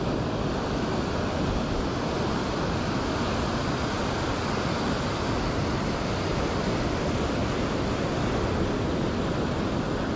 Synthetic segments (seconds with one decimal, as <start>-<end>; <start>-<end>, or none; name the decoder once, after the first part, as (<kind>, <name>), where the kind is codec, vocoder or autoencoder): none